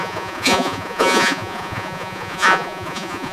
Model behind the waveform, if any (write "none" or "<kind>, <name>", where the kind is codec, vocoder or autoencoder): vocoder, Vocos